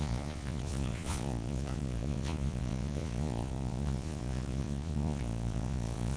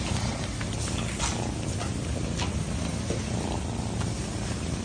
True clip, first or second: second